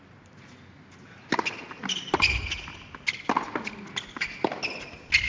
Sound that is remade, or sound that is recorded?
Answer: recorded